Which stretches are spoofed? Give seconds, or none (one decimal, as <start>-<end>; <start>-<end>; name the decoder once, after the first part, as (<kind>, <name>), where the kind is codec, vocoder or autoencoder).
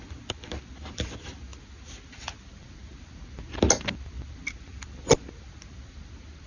none